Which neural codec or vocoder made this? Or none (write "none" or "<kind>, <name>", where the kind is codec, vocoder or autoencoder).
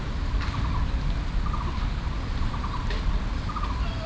none